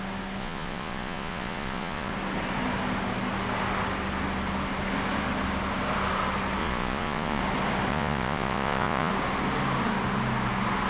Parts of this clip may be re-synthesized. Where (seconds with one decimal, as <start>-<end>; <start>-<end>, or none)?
0.4-2.1; 6.6-7.4; 7.9-9.1